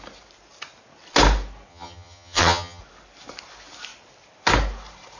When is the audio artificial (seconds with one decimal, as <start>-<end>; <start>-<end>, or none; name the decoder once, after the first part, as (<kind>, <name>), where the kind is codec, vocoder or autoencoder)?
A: 1.7-2.8 (vocoder, HiFi-GAN)